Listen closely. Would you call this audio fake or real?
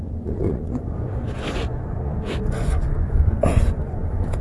fake